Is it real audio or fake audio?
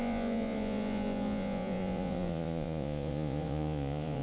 fake